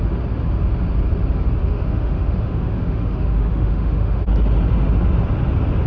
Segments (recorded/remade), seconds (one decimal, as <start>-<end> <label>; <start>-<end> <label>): 0.0-1.6 recorded; 1.6-4.2 remade; 4.2-5.9 recorded